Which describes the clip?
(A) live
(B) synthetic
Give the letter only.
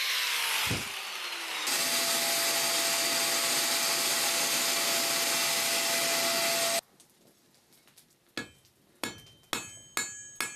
A